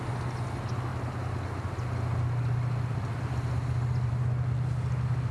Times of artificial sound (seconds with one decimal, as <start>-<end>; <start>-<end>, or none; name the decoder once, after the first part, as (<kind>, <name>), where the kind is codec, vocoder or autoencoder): none